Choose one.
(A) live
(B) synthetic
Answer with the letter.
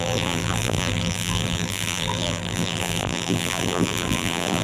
B